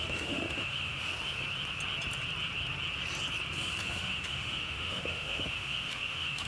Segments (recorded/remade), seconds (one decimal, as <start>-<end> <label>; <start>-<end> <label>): 0.0-1.1 remade; 1.1-3.8 recorded; 3.8-6.5 remade